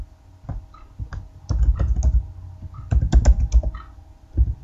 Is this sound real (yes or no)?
yes